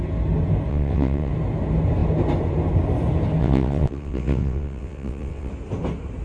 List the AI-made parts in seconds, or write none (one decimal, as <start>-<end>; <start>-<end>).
0.7-1.3; 3.4-5.5